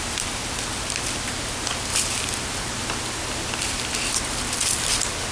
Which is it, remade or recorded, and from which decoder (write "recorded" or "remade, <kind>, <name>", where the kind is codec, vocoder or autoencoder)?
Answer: recorded